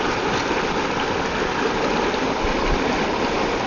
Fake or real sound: real